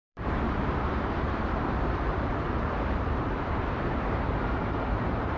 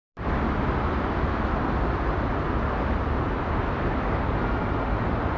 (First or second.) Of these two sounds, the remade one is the first